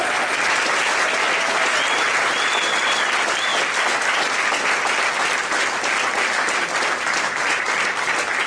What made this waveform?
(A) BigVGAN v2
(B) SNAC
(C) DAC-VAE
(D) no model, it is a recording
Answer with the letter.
D